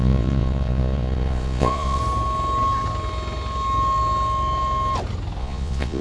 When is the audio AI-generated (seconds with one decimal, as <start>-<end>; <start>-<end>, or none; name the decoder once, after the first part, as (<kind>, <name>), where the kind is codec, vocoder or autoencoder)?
0.0-2.0 (vocoder, Vocos); 5.4-6.0